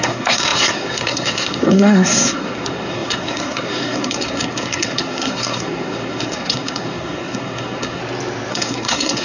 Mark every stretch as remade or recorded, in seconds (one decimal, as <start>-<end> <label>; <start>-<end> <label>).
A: 0.0-8.0 remade; 8.0-8.5 recorded; 8.5-9.2 remade